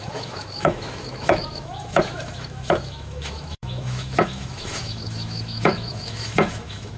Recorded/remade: remade